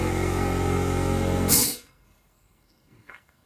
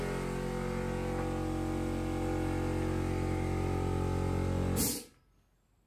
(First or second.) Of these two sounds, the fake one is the first